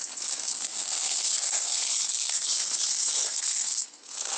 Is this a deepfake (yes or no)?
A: yes